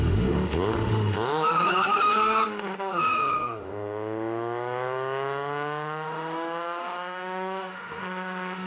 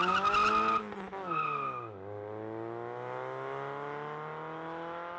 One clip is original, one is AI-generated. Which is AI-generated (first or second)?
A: first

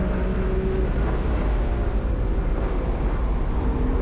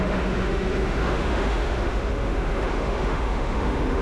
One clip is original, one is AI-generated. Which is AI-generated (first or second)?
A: second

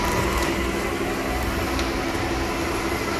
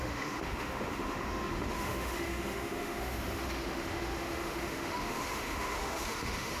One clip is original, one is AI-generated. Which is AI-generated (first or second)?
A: second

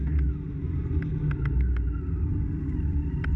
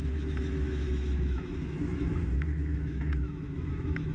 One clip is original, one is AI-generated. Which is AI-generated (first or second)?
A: second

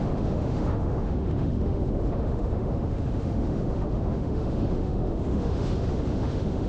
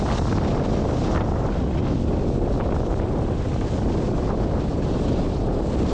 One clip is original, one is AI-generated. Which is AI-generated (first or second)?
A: first